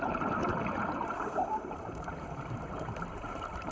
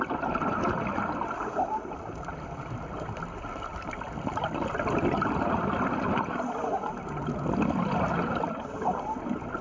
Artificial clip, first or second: first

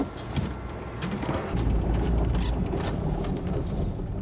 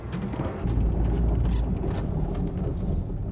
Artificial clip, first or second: first